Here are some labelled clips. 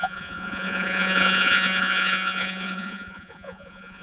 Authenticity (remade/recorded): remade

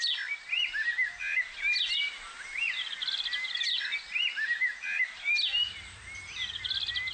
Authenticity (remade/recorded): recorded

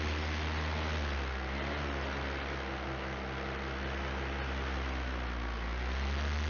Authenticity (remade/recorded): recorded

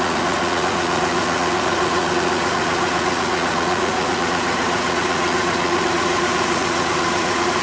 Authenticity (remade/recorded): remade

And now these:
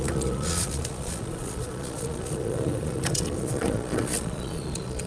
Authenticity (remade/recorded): remade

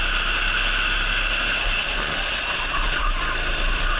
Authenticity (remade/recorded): recorded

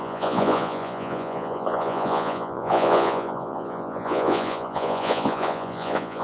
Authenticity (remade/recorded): remade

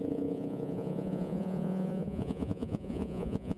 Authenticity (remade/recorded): remade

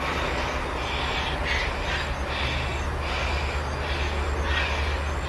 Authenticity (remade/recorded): recorded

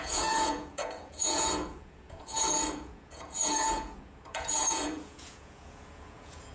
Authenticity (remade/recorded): remade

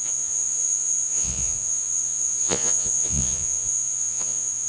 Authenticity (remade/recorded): remade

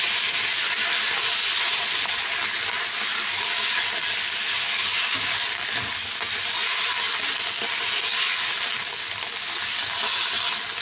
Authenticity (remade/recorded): recorded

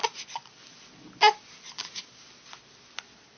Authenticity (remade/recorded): recorded